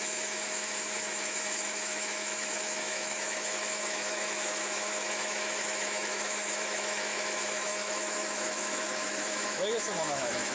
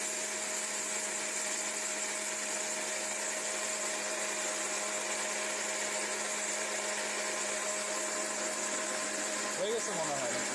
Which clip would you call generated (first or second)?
first